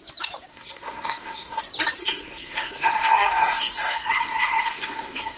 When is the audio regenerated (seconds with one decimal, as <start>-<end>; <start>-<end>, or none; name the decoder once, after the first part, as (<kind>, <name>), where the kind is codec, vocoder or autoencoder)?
0.5-1.6 (codec, SNAC); 2.0-5.4